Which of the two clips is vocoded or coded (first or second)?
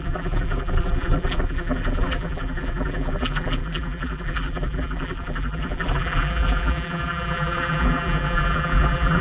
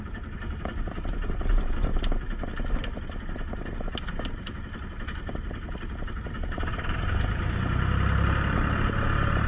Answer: first